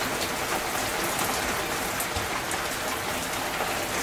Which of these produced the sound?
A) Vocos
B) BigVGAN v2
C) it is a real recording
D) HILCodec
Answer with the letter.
C